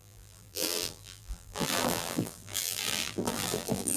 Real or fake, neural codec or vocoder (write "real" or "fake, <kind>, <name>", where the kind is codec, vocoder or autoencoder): fake, vocoder, BigVGAN v2